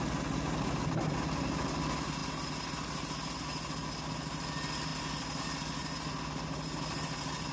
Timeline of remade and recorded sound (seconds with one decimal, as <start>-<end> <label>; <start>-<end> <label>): 0.0-7.5 recorded